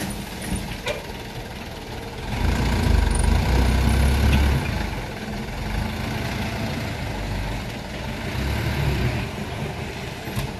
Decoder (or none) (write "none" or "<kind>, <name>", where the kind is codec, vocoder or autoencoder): none